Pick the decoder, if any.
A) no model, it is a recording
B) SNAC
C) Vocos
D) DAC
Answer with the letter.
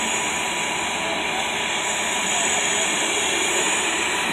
A